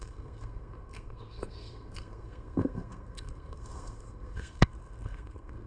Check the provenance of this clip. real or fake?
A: fake